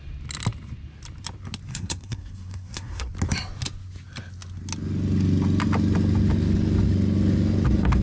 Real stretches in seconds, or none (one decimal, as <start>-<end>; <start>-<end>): 0.0-1.7; 3.1-8.0